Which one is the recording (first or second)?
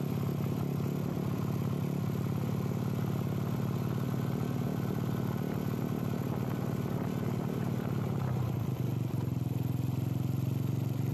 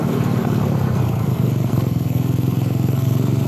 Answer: first